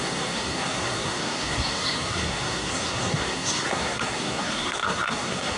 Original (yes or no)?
no